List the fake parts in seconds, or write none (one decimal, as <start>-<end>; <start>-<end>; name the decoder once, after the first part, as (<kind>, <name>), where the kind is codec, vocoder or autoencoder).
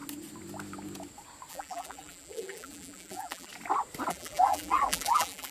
1.5-3.5 (vocoder, BigVGAN v2); 4.1-5.5